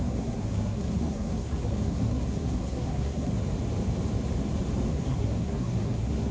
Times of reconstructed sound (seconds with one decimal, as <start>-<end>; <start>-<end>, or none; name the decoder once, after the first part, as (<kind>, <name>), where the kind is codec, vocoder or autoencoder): 0.0-3.3 (codec, SNAC); 4.9-6.3